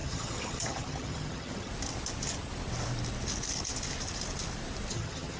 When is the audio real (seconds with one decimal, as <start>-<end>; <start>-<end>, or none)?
1.7-4.9